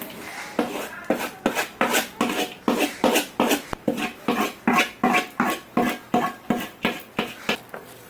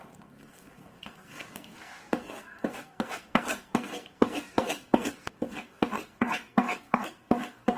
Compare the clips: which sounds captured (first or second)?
first